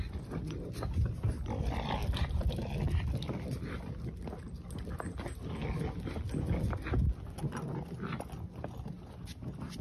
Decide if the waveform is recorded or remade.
recorded